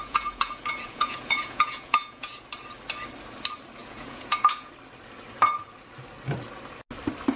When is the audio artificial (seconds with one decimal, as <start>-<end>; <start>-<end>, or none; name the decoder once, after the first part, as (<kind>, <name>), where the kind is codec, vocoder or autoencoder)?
0.0-2.4 (vocoder, Vocos); 3.8-4.7